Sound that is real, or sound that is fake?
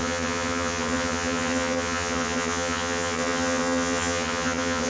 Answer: fake